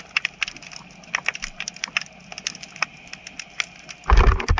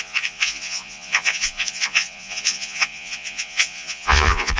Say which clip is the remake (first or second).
second